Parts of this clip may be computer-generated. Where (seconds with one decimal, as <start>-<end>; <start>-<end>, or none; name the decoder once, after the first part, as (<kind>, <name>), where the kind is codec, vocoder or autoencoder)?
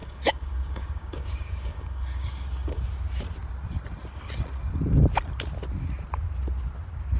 0.0-2.8 (codec, DAC)